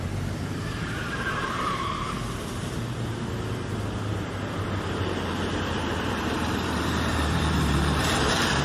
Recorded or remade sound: remade